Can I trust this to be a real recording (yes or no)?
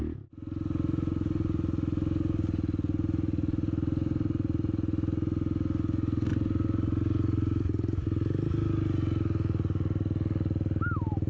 yes